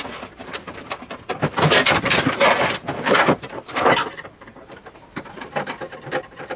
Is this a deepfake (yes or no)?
yes